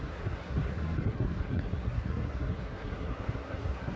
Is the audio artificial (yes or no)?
yes